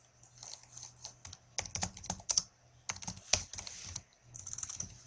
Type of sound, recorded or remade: recorded